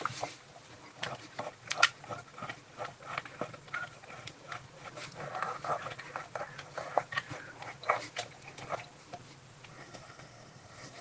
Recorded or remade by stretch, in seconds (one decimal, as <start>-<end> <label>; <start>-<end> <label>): 0.0-9.7 recorded; 9.7-11.0 remade